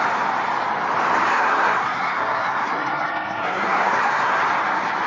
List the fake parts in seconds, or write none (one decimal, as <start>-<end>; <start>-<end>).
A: 1.3-4.4